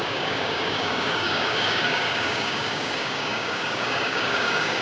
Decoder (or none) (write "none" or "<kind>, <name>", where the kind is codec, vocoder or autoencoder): codec, DAC